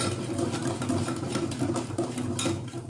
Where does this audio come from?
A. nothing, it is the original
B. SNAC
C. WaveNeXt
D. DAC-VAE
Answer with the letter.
A